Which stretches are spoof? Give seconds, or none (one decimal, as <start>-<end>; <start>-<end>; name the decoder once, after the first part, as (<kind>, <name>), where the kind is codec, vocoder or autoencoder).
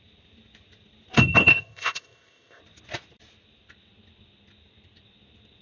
1.5-2.6 (codec, ZipCodec)